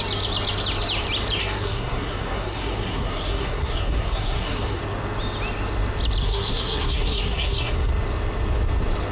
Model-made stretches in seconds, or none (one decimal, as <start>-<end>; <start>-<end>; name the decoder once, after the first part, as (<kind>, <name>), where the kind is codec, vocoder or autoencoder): 1.4-4.8 (codec, SNAC); 6.2-7.9